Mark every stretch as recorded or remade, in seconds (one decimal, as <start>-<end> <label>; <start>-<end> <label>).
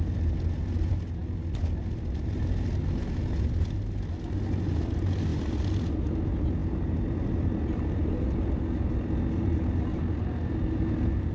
0.0-11.3 recorded